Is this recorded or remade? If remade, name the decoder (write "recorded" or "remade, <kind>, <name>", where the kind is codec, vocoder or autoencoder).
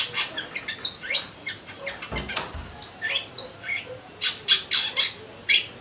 recorded